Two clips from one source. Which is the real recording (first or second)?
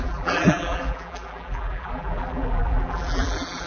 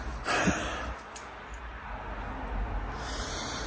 second